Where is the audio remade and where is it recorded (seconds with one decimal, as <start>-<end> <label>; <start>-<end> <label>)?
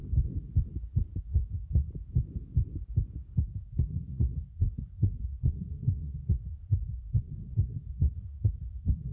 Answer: 0.0-1.2 recorded; 1.2-1.9 remade; 1.9-3.4 recorded; 3.4-9.1 remade